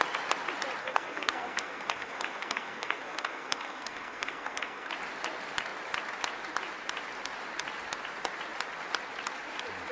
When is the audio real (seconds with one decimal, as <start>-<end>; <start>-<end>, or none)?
0.0-0.8; 4.9-9.9